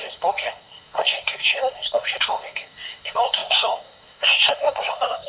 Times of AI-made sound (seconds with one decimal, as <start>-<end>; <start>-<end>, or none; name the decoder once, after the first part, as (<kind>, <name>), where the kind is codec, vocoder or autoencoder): 0.0-5.3 (codec, SNAC)